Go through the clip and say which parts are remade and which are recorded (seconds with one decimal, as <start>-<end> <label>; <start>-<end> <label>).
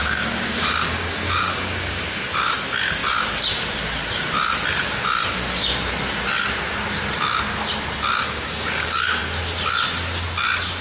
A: 0.0-2.0 remade; 2.0-8.2 recorded; 8.2-9.2 remade; 9.2-10.8 recorded